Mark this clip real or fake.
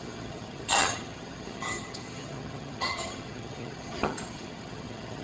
fake